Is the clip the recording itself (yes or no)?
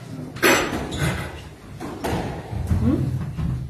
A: yes